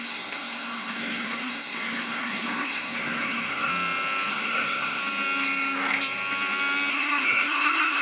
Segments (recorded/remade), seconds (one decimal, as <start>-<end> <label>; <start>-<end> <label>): 0.0-3.7 remade; 3.7-4.3 recorded; 4.3-5.0 remade; 5.0-6.9 recorded; 6.9-8.0 remade